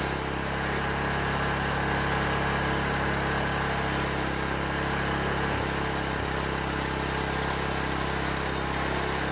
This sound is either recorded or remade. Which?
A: recorded